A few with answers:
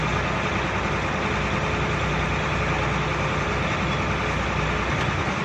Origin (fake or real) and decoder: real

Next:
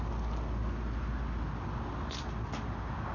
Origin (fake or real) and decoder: real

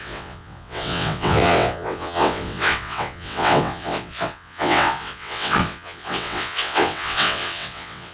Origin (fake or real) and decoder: fake, vocoder, WaveNeXt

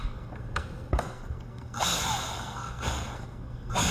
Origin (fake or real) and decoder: fake, codec, SNAC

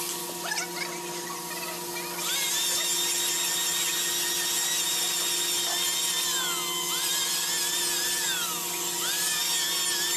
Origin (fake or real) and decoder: real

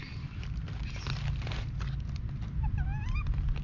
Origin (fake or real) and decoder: real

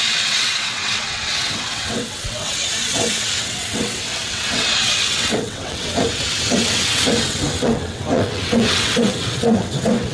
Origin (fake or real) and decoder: fake, vocoder, WaveNeXt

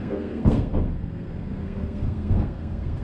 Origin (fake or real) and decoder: fake, codec, SNAC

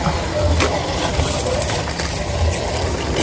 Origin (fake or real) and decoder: real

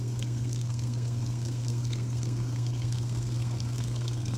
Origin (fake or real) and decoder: fake, codec, SNAC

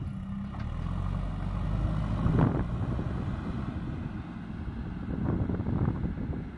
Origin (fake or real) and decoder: real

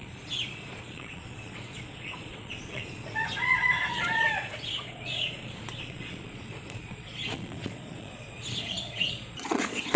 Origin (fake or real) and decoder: fake, vocoder, Vocos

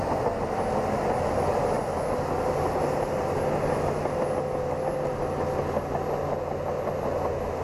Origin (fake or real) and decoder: real